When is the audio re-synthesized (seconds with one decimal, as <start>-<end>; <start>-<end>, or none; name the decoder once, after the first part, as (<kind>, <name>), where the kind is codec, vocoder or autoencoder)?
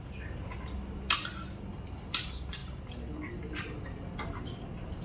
none